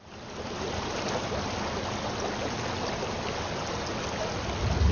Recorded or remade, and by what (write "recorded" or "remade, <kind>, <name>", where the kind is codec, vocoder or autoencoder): recorded